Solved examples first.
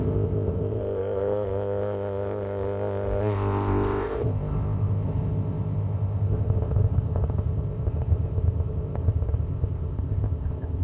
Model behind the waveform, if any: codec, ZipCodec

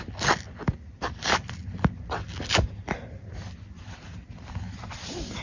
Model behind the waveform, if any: none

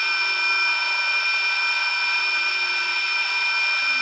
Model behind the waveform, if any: vocoder, BigVGAN v2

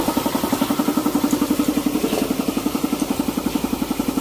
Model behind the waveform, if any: vocoder, BigVGAN v2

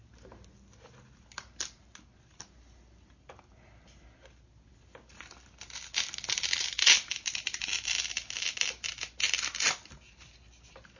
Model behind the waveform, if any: none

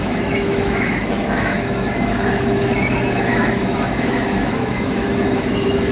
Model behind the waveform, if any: autoencoder, DAC-VAE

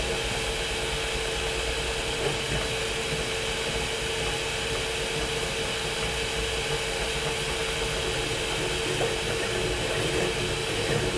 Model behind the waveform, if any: none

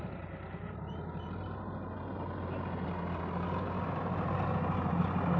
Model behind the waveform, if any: none